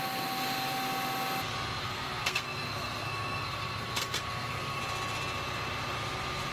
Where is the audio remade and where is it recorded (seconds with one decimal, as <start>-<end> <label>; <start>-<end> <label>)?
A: 0.0-1.8 recorded; 1.8-4.8 remade; 4.8-6.5 recorded